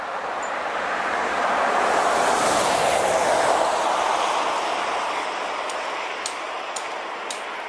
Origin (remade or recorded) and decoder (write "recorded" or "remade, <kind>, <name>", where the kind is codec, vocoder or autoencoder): recorded